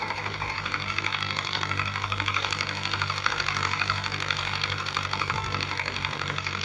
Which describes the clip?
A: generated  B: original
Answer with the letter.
A